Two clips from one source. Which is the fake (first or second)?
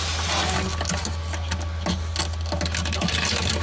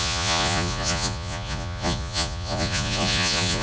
second